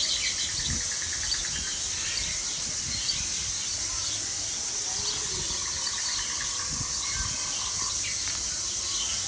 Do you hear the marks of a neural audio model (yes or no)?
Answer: no